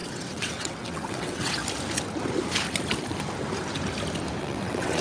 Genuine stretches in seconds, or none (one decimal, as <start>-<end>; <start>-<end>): 1.6-4.4